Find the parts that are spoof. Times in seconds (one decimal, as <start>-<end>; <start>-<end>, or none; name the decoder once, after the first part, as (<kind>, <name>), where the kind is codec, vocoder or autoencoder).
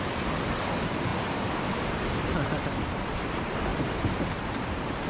3.7-5.1 (vocoder, BigVGAN v2)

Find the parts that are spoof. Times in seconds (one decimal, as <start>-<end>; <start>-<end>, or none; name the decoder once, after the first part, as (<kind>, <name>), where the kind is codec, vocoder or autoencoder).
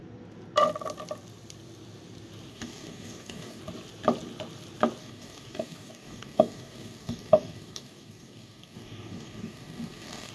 2.5-3.6 (codec, DAC); 5.0-10.3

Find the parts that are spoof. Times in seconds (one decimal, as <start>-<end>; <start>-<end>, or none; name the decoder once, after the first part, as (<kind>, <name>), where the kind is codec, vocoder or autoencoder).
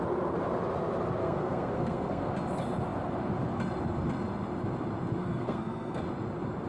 1.2-2.3 (codec, SNAC); 5.2-6.0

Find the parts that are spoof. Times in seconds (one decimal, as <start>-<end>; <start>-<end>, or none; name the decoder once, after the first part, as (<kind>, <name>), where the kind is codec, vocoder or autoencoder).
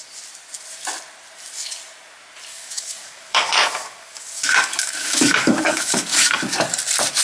2.5-6.4 (codec, DAC)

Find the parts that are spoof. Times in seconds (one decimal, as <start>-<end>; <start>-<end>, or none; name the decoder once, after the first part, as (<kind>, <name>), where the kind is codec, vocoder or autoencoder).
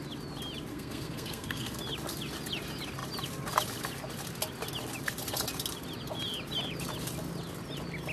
0.7-1.8 (codec, SNAC)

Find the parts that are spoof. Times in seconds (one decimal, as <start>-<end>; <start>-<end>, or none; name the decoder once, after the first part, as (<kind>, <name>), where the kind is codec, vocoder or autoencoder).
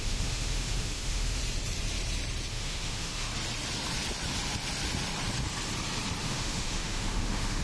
0.0-1.4 (autoencoder, DAC-VAE); 2.5-3.3; 6.2-7.6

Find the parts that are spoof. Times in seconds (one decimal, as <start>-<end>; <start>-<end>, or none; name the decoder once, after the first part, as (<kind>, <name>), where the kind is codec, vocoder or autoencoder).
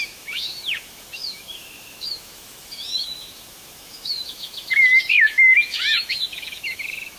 0.0-7.2 (autoencoder, DAC-VAE)